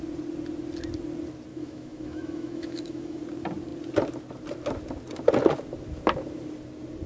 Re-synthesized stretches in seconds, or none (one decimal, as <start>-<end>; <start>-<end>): 1.5-3.2